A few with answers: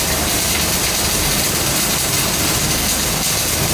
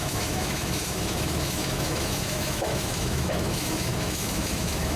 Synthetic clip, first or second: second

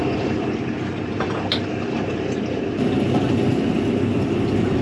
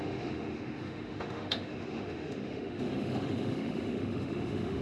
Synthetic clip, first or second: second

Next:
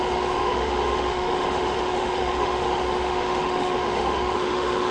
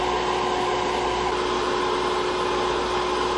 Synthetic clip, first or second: first